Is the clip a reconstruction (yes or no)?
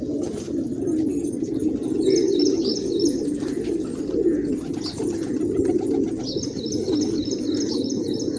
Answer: no